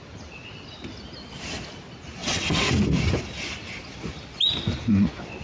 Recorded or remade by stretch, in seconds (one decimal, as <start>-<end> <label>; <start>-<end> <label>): 0.0-2.2 recorded; 2.2-2.7 remade; 2.7-5.4 recorded